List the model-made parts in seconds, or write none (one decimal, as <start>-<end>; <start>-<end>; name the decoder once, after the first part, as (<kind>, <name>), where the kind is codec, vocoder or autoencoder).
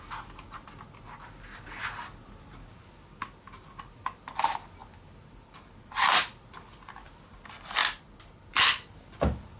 none